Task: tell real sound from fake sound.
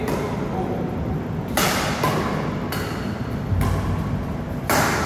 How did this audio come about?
real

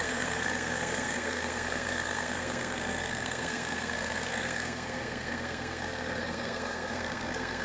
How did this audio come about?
fake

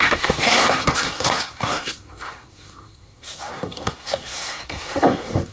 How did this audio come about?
fake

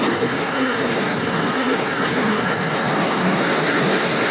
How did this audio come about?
fake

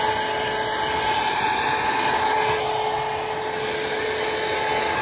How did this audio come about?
real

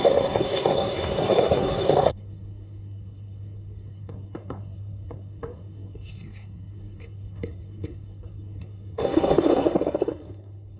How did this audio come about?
fake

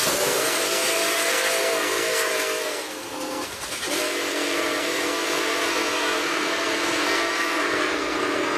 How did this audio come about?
fake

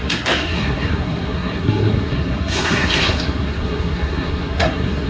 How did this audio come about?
fake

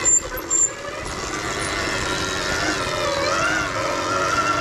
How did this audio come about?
real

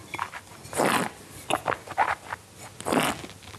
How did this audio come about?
real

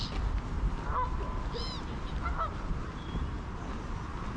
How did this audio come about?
real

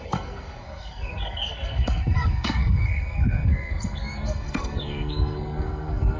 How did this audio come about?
fake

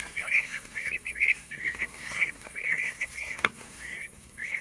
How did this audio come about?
fake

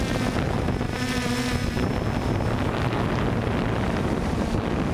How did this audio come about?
real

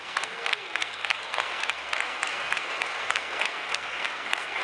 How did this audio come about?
fake